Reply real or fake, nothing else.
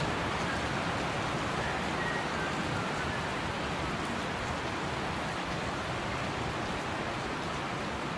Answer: real